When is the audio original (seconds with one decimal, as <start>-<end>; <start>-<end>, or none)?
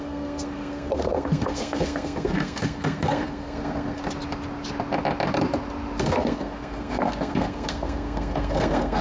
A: 4.0-6.0